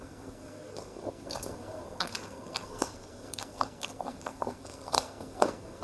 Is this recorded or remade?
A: remade